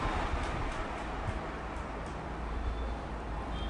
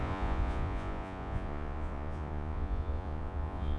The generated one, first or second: second